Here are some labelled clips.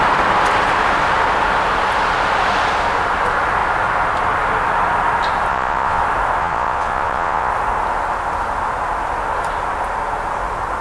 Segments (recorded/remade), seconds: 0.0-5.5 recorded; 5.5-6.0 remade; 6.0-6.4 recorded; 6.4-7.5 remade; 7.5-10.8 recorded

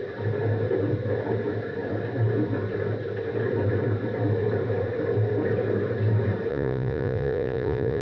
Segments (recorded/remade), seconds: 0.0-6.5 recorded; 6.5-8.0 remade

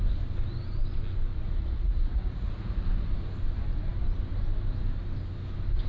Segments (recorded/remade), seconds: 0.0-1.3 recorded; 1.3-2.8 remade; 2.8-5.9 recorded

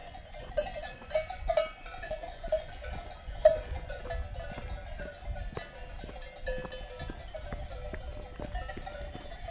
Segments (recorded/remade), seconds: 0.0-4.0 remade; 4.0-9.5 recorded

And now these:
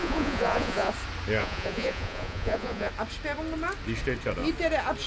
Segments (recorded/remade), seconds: 0.0-0.9 remade; 0.9-1.4 recorded; 1.4-2.9 remade; 2.9-5.1 recorded

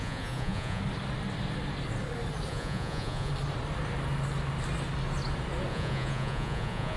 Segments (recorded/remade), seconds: 0.0-0.8 remade; 0.8-2.5 recorded; 2.5-3.3 remade; 3.3-5.7 recorded; 5.7-7.0 remade

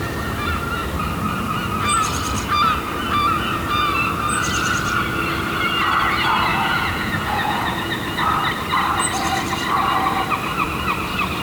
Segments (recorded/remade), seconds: 0.0-6.5 recorded; 6.5-7.9 remade; 7.9-11.4 recorded